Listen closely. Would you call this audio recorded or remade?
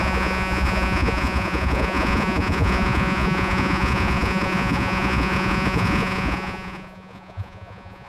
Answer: remade